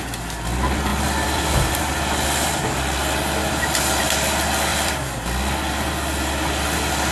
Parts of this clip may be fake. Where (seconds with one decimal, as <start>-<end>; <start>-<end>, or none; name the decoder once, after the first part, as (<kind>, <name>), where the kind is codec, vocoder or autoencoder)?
0.9-1.8 (vocoder, BigVGAN v2); 3.4-4.0; 4.7-5.2